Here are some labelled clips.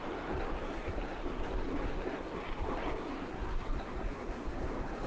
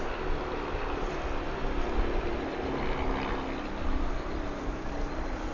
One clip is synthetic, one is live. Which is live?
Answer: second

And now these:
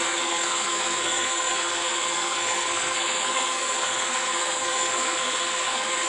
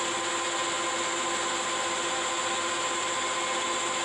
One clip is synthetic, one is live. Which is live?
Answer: second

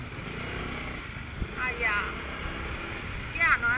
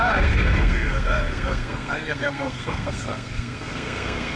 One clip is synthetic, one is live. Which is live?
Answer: first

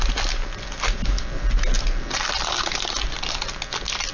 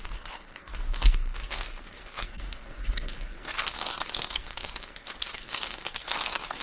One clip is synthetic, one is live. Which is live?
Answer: first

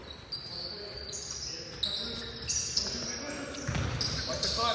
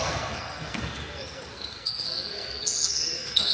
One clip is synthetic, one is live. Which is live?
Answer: first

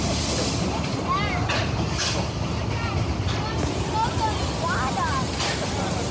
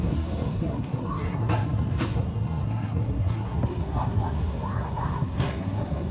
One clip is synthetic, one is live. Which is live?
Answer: first